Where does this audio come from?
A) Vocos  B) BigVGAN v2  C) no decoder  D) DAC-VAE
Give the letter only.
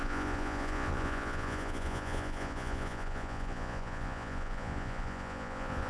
A